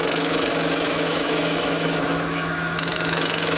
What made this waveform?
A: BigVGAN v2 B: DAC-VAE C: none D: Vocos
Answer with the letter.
B